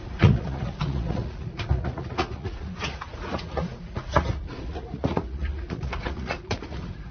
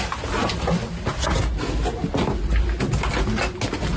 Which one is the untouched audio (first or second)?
second